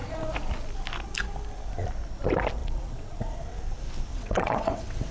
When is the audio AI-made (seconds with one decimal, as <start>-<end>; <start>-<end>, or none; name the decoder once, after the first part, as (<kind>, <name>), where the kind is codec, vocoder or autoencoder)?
2.6-3.3 (vocoder, WaveNeXt); 4.1-5.1